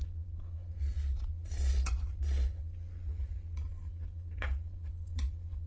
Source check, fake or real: fake